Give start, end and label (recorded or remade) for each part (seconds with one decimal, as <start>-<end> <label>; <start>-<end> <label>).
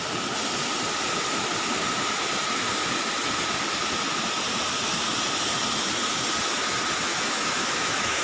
0.0-7.1 recorded; 7.1-8.2 remade